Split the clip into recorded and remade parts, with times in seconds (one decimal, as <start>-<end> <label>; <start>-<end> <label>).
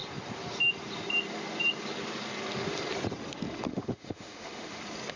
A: 0.0-3.7 recorded; 3.7-4.8 remade; 4.8-5.2 recorded